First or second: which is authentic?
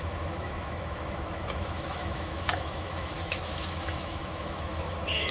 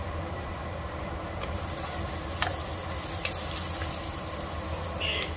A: second